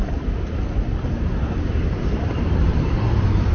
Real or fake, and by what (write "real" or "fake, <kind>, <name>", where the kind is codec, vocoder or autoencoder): fake, vocoder, BigVGAN v2